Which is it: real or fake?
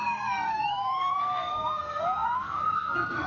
fake